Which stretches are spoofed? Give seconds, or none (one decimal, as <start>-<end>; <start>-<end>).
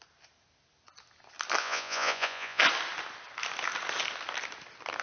1.6-2.6